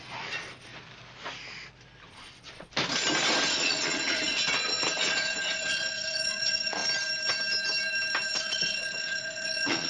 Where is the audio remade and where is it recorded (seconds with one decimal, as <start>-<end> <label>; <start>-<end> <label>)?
0.0-0.7 remade; 0.7-2.1 recorded; 2.1-2.7 remade; 2.7-3.4 recorded; 3.4-6.8 remade; 6.8-8.3 recorded; 8.3-9.9 remade